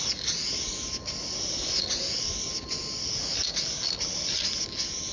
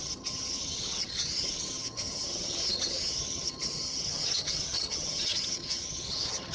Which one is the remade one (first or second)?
second